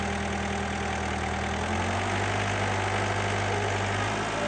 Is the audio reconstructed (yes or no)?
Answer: no